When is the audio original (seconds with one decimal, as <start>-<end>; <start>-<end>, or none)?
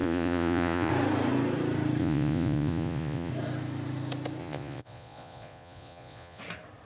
0.9-2.0; 3.3-4.4; 6.4-6.9